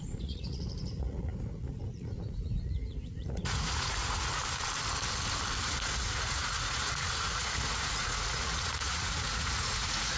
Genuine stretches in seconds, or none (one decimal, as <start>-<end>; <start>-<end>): 4.4-5.6